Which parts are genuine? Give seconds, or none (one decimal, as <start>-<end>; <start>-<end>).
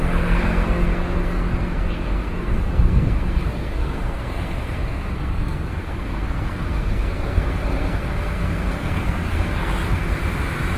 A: 10.2-10.8